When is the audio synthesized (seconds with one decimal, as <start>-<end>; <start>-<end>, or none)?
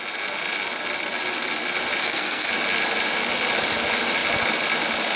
2.0-2.5